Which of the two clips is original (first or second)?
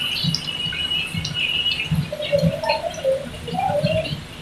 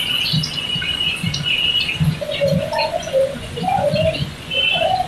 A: first